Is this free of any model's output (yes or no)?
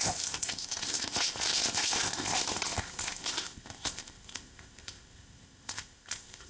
no